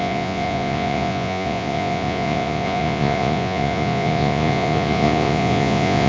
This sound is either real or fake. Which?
fake